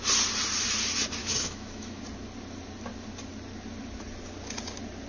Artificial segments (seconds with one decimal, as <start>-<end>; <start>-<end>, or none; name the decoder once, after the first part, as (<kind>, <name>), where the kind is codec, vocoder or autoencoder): 1.2-2.0 (autoencoder, DAC-VAE)